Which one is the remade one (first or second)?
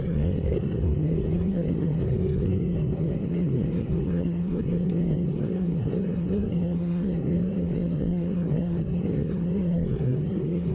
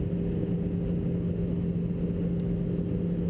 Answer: first